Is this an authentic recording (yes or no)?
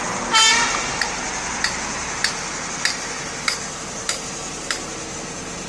yes